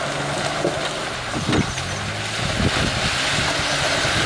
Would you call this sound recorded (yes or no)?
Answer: yes